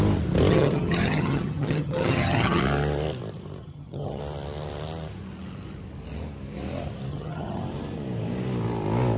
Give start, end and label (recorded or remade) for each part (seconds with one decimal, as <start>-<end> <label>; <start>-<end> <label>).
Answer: 0.0-0.5 recorded; 0.5-2.6 remade; 2.6-3.6 recorded; 3.6-4.2 remade; 4.2-7.1 recorded; 7.1-7.6 remade; 7.6-9.2 recorded